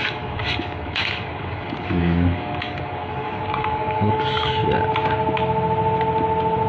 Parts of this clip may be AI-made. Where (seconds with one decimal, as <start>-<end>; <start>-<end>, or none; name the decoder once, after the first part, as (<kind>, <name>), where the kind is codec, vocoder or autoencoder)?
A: 0.0-4.6 (codec, DAC)